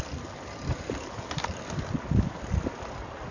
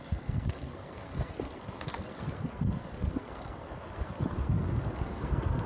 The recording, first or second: first